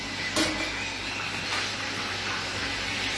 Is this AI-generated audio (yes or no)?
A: no